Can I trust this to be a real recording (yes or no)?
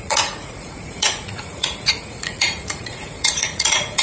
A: no